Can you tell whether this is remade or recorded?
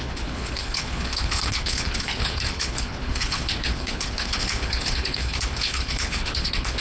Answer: remade